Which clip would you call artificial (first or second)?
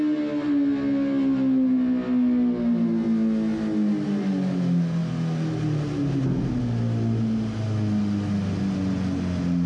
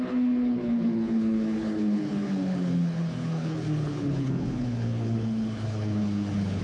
second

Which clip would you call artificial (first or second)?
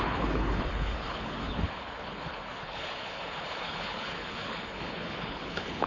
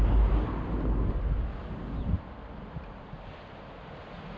first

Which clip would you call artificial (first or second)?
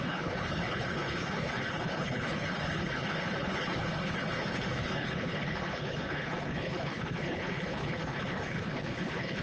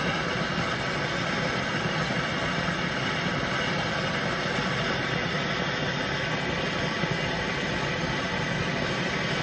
first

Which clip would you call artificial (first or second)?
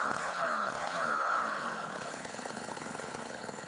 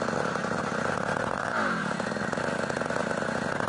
first